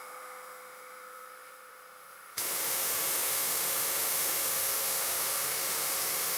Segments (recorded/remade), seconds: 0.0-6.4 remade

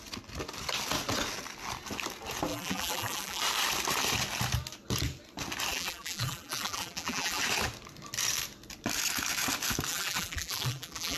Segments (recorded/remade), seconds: 0.0-2.5 recorded; 2.5-3.4 remade; 3.4-5.7 recorded; 5.7-7.4 remade; 7.4-9.9 recorded; 9.9-11.2 remade

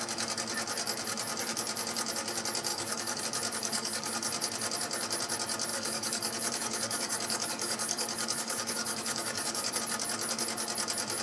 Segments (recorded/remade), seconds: 0.0-2.7 recorded; 2.7-3.2 remade; 3.2-3.6 recorded; 3.6-4.1 remade; 4.1-5.7 recorded; 5.7-9.8 remade; 9.8-11.2 recorded

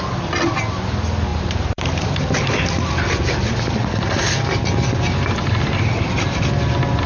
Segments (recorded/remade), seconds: 0.0-1.3 recorded; 1.3-2.2 remade; 2.2-7.1 recorded